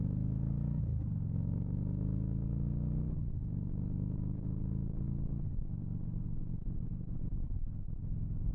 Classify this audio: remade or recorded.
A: recorded